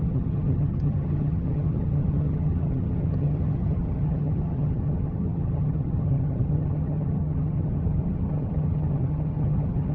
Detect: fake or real fake